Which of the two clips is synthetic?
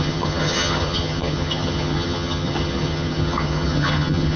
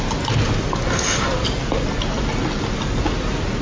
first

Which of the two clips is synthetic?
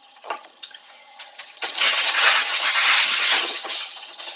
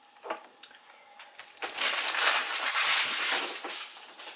first